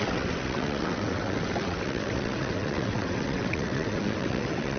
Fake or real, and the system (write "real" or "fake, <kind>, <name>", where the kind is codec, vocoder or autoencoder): fake, vocoder, WaveNeXt